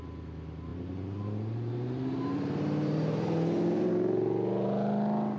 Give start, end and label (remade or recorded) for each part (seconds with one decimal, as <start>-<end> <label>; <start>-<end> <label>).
0.0-0.7 recorded; 0.7-3.9 remade; 3.9-5.4 recorded